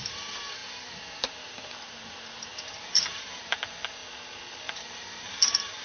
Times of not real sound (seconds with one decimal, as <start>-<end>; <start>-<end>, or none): 0.0-4.0; 4.7-5.8